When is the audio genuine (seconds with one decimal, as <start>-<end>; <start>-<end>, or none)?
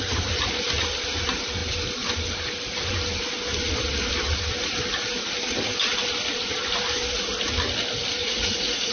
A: 0.0-8.2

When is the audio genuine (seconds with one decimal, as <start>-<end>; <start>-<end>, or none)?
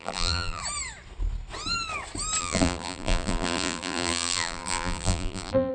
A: 0.6-2.4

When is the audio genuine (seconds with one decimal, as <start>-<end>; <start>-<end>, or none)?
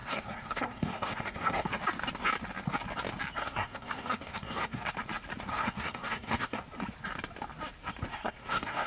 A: 1.7-3.4; 4.9-5.5; 6.6-8.1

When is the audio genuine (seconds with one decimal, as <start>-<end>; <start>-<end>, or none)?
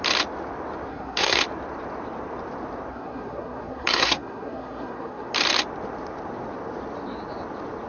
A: 0.0-0.9; 1.4-2.9; 5.3-7.9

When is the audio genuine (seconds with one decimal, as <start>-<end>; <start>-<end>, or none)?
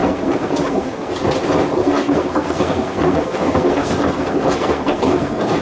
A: 1.1-1.8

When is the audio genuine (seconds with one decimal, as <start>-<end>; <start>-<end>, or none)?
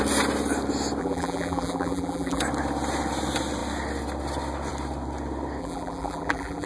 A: 0.0-1.0; 2.4-5.6